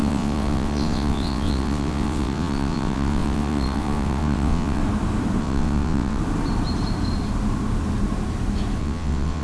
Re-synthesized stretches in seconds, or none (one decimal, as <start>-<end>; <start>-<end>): 0.0-4.8; 5.4-6.2; 8.8-9.4